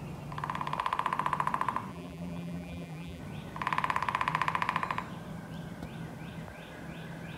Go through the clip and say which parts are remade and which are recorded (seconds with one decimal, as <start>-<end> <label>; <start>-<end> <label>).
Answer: 0.0-1.9 recorded; 1.9-3.2 remade; 3.2-7.4 recorded